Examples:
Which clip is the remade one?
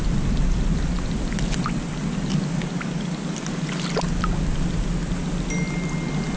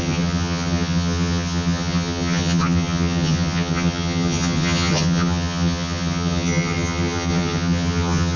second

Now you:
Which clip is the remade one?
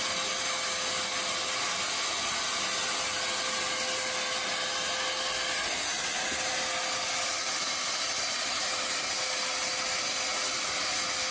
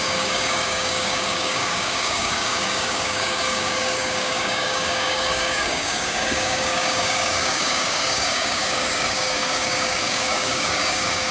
second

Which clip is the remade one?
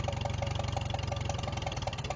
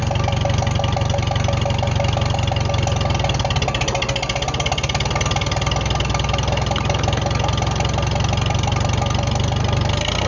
first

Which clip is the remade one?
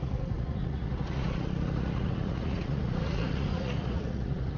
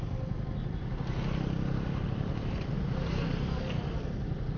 first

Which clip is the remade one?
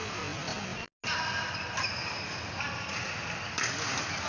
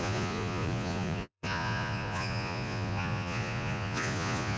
second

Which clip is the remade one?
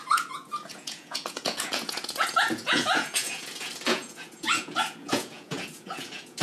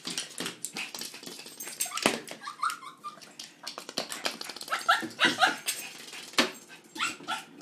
first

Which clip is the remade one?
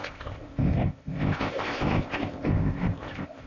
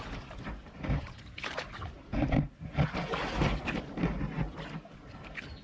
first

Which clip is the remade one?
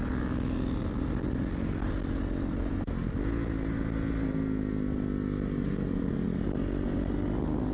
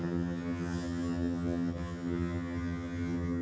second